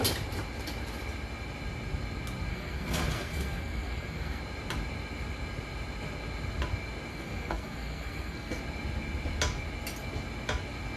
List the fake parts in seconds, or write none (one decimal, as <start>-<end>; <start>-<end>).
2.5-4.4; 7.1-8.6